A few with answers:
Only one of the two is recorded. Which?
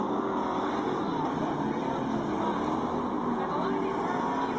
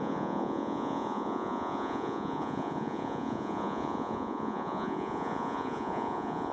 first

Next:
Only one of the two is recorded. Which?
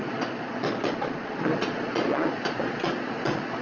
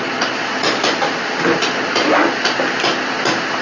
second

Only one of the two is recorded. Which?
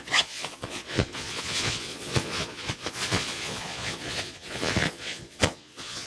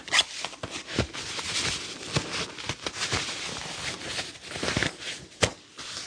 second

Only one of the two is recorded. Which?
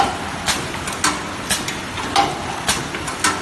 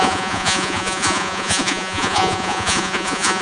first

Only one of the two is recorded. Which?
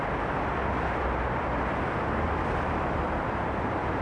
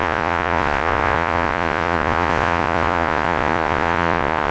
first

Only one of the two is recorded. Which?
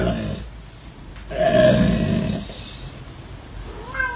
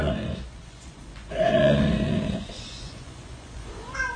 first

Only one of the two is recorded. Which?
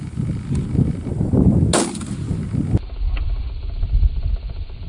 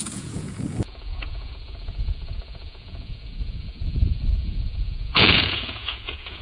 first